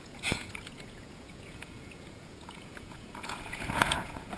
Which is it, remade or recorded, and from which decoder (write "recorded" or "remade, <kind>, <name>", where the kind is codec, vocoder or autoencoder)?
remade, vocoder, Vocos